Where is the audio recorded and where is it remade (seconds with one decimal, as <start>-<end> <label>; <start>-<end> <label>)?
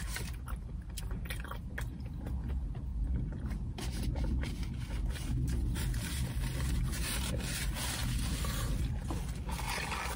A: 0.0-10.2 recorded